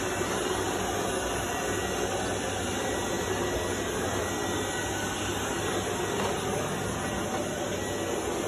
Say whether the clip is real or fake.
real